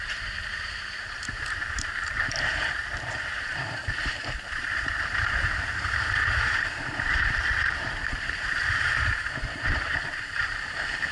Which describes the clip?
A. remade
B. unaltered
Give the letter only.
A